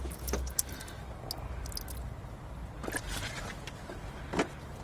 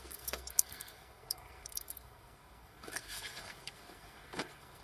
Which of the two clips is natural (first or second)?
first